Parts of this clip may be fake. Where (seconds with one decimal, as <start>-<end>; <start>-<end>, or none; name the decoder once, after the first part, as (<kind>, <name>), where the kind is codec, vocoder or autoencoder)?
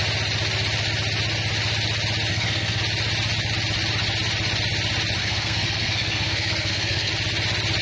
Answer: 2.3-2.8 (codec, SNAC); 5.2-7.1